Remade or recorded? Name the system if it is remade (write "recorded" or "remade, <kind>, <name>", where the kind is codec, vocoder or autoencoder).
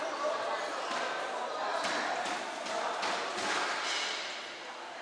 recorded